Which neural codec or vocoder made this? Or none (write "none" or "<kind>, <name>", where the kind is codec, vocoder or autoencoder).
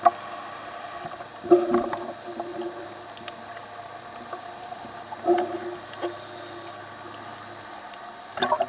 none